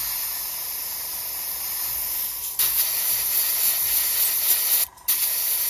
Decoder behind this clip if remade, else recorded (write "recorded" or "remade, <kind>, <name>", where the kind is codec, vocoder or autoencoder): recorded